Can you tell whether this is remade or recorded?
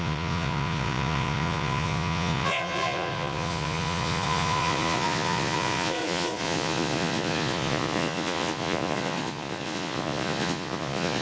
remade